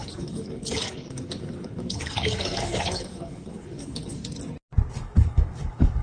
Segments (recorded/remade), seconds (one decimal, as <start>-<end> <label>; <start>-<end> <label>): 0.0-4.2 remade; 4.2-4.9 recorded; 4.9-6.0 remade